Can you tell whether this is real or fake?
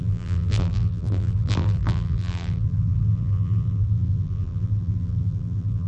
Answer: fake